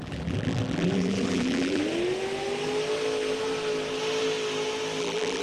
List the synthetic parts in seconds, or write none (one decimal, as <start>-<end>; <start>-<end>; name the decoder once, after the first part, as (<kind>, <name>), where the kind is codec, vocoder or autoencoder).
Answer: 0.0-1.8 (vocoder, BigVGAN v2); 5.0-5.4